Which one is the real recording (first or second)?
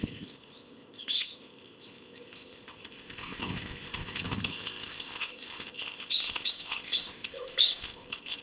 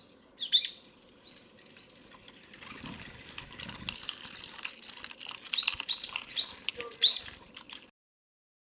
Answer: second